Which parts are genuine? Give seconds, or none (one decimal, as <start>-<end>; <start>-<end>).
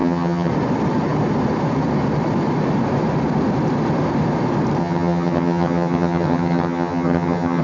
0.5-4.8